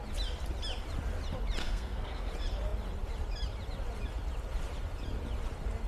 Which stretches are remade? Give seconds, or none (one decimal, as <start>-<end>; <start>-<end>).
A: 1.6-2.3

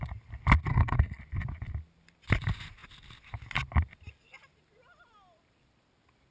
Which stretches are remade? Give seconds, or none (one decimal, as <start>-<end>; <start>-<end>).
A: 0.7-1.2

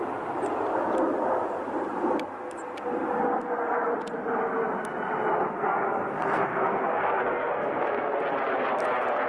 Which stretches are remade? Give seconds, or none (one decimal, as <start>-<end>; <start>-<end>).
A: 5.5-8.2

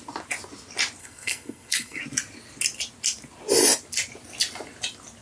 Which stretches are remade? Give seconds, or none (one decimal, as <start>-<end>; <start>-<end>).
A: 1.0-2.0

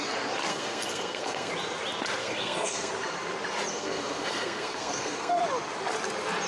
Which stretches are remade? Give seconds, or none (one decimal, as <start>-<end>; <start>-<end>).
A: 0.5-1.5; 2.2-2.9; 3.7-5.4